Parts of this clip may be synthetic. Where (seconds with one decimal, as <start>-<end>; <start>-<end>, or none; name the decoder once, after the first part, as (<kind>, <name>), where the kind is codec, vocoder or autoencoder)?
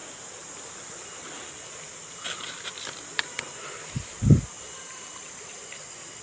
none